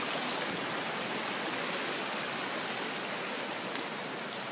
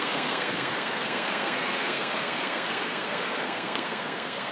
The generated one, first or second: second